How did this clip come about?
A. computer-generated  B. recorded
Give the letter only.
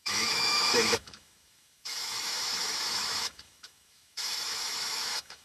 A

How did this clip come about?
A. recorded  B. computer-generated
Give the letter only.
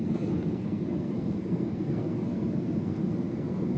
B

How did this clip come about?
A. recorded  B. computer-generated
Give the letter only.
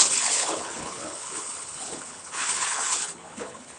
B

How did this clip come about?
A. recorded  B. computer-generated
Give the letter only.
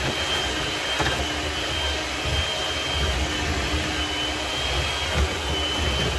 A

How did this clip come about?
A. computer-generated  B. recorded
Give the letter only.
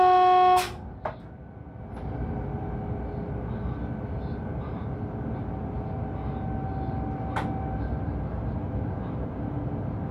B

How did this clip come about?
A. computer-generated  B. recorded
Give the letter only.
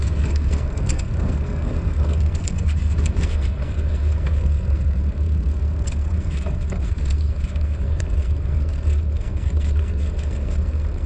A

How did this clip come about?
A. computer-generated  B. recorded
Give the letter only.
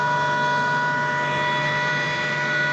B